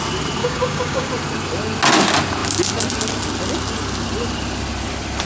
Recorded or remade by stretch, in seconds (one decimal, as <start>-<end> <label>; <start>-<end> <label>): 0.0-0.4 recorded; 0.4-1.1 remade; 1.1-5.3 recorded

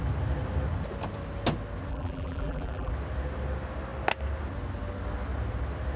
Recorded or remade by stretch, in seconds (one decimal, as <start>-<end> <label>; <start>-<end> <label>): 0.0-1.9 recorded; 1.9-2.9 remade; 2.9-6.0 recorded

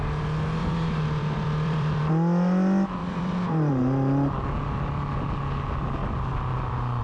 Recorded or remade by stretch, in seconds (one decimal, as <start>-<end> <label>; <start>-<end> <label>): 0.0-0.6 recorded; 0.6-2.0 remade; 2.0-3.0 recorded; 3.0-3.7 remade; 3.7-7.0 recorded

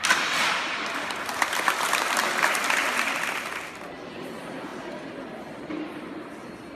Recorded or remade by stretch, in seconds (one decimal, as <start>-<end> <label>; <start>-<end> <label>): 0.0-6.7 recorded

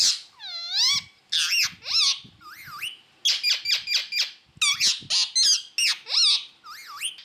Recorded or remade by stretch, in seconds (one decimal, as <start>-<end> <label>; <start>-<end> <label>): 0.0-7.2 recorded

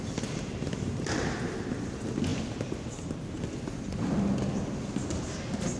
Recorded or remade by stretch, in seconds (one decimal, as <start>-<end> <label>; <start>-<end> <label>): 0.0-2.3 recorded; 2.3-3.0 remade; 3.0-5.8 recorded

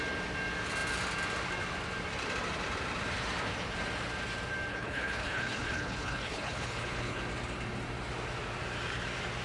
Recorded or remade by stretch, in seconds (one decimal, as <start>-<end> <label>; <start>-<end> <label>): 0.0-4.7 recorded; 4.7-7.2 remade; 7.2-9.4 recorded

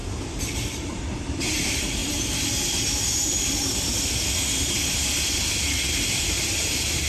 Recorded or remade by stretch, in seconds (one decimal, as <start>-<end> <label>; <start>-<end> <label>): 0.0-2.0 remade; 2.0-6.3 recorded; 6.3-7.1 remade